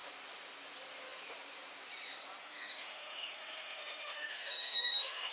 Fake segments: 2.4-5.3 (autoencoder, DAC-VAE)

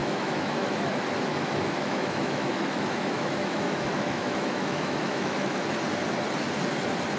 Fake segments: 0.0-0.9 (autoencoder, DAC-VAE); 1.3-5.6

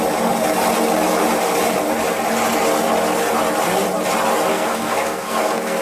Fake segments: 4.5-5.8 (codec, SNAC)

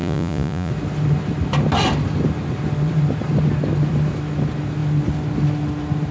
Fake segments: 0.0-0.7 (vocoder, Vocos)

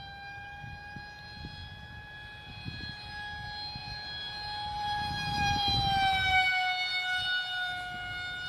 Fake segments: 3.8-5.7 (vocoder, BigVGAN v2)